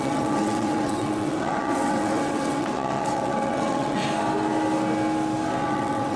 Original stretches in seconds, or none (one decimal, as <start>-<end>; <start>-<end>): 4.0-5.6